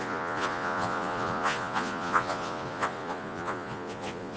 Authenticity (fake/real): fake